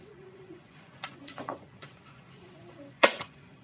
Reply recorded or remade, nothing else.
remade